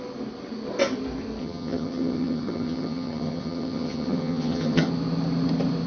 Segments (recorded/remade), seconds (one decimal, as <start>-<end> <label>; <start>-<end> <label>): 0.0-1.4 recorded; 1.4-4.9 remade; 4.9-5.9 recorded